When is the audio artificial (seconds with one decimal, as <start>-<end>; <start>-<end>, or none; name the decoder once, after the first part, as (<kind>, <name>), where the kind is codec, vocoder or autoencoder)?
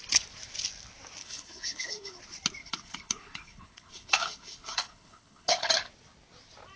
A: 1.2-2.2 (codec, HILCodec); 2.6-5.7